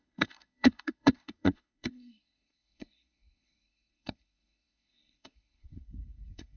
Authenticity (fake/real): fake